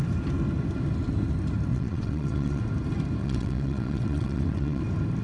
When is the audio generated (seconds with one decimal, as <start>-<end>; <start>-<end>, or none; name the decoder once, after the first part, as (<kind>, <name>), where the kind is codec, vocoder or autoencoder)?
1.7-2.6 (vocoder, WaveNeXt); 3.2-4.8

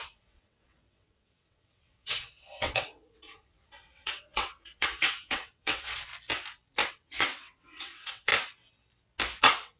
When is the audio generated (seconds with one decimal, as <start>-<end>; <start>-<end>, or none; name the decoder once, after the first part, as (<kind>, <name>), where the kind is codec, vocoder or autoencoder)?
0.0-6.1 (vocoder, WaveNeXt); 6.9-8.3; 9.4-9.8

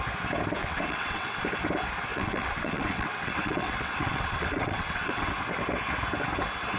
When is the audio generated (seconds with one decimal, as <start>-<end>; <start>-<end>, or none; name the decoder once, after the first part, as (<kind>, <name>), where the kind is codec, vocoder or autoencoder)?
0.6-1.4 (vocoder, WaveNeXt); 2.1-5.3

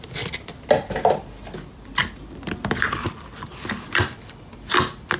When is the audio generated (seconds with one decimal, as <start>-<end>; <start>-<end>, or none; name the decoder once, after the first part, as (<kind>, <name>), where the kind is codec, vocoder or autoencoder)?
none

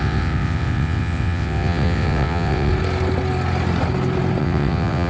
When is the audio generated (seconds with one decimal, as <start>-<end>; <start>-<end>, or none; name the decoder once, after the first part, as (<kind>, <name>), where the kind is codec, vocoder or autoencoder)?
0.0-2.7 (vocoder, WaveNeXt); 4.4-5.1